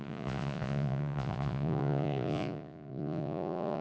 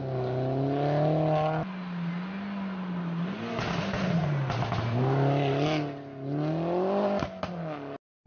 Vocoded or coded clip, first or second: first